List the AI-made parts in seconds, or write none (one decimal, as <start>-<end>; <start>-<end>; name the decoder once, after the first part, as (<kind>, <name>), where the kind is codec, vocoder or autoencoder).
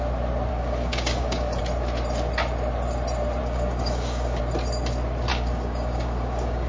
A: 0.5-1.6 (codec, DAC); 3.4-4.4; 5.3-6.7